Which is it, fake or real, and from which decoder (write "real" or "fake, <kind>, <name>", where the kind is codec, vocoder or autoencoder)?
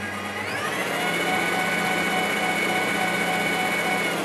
real